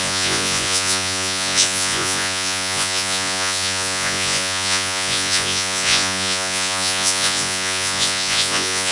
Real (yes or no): no